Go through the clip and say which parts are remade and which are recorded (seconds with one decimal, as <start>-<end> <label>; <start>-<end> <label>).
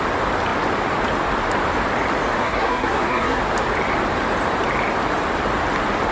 0.0-2.4 recorded; 2.4-3.4 remade; 3.4-6.1 recorded